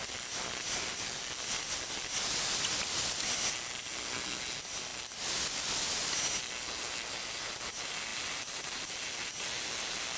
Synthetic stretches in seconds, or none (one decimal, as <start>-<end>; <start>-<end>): 8.1-9.3